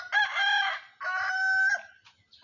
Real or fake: real